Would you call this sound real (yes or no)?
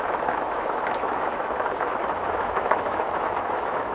no